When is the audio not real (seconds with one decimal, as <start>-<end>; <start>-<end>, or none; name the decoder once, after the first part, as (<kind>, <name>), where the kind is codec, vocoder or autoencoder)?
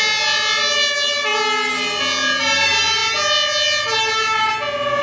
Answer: none